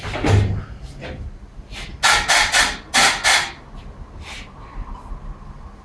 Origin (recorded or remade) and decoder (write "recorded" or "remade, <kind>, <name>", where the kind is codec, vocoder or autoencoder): recorded